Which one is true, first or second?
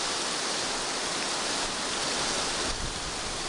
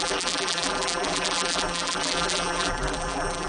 first